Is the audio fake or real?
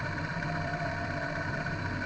fake